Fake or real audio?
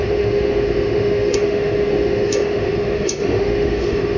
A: fake